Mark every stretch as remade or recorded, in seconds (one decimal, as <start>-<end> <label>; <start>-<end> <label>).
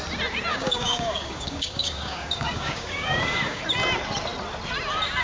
0.0-0.5 recorded; 0.5-3.6 remade; 3.6-5.2 recorded